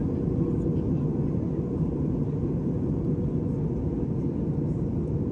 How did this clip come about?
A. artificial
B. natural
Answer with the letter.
B